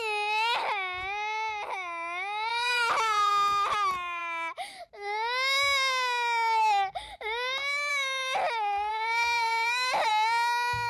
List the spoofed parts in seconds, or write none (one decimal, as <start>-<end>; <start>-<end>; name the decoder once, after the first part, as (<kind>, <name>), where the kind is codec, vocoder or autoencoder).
2.5-3.3 (vocoder, BigVGAN v2); 8.9-10.1